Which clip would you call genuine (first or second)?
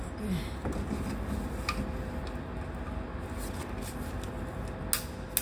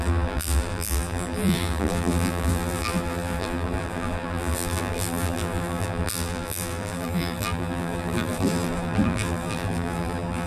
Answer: first